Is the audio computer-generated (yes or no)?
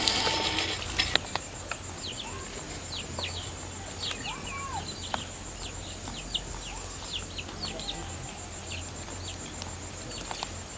no